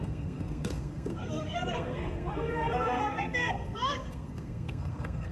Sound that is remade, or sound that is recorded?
remade